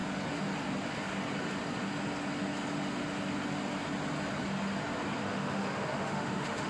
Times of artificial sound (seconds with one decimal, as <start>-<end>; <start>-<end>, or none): 5.2-6.7